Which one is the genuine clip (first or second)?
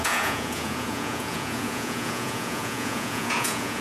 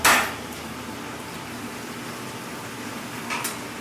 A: second